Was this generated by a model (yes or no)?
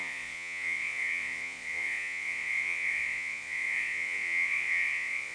yes